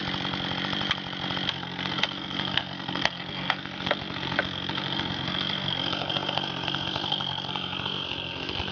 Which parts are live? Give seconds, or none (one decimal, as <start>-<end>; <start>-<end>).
0.0-1.5